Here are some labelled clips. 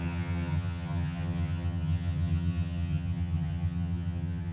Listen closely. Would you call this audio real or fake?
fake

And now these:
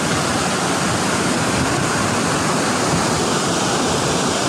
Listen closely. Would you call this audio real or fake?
real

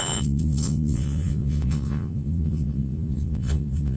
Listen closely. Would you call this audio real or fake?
fake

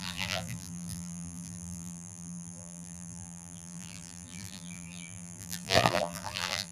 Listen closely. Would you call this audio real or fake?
fake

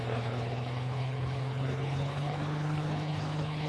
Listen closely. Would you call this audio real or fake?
fake